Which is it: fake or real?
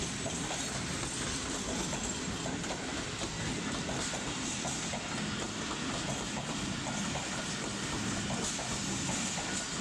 real